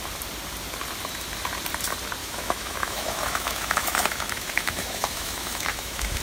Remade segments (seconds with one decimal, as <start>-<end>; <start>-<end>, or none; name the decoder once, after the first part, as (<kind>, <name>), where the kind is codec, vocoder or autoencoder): 2.2-6.2 (autoencoder, DAC-VAE)